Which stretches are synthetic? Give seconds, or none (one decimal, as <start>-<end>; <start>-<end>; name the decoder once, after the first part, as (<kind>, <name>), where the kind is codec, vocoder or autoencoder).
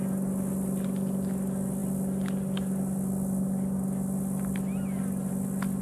none